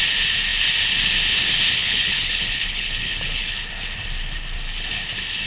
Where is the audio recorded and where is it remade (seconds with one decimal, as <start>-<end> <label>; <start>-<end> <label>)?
0.0-1.8 recorded; 1.8-3.7 remade; 3.7-5.5 recorded